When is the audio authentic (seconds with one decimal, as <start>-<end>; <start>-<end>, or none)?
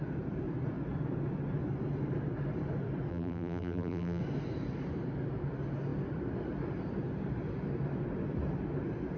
0.0-3.1; 4.2-9.2